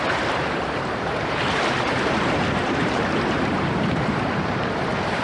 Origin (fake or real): fake